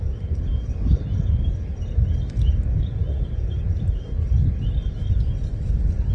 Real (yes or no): yes